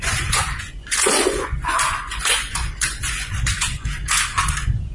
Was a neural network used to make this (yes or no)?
yes